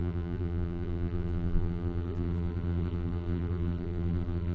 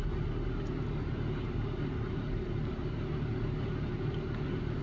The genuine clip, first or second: second